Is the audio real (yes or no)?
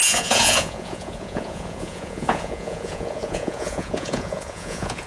no